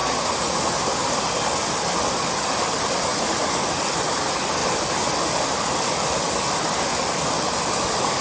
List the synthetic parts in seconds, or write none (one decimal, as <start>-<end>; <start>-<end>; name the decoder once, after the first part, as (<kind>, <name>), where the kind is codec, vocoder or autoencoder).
0.0-0.6 (vocoder, Vocos); 3.1-3.6